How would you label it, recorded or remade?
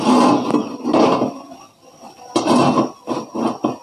recorded